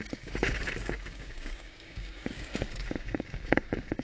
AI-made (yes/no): yes